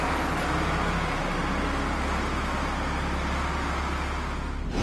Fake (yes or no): no